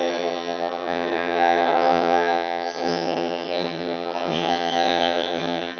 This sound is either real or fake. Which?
fake